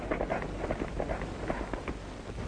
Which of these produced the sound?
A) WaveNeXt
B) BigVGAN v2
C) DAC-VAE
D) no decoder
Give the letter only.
D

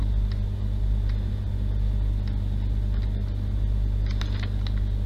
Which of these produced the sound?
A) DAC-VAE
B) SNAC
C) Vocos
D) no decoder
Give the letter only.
D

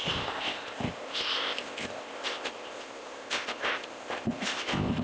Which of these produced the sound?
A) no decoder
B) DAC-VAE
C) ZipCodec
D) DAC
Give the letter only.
C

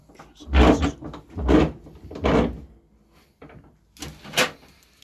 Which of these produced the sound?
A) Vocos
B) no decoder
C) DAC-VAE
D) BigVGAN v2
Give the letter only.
B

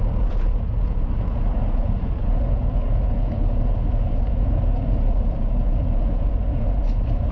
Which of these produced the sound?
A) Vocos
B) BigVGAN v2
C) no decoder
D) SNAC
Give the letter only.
A